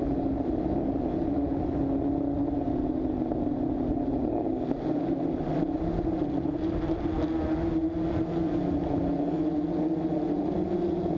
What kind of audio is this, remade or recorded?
recorded